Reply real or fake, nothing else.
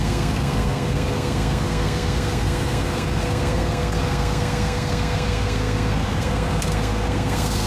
fake